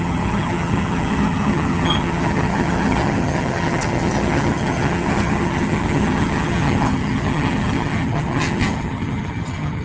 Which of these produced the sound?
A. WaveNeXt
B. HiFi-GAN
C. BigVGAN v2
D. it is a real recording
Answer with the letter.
B